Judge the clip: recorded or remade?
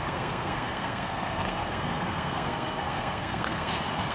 remade